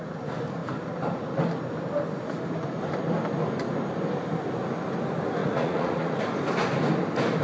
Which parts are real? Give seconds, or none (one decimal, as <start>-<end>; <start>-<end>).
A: 0.0-5.4; 6.2-7.4